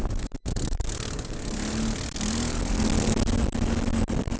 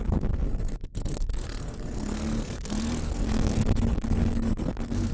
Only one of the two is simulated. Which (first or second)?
second